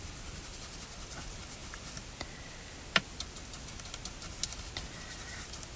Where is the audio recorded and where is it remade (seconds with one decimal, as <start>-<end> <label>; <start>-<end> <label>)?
0.0-5.8 recorded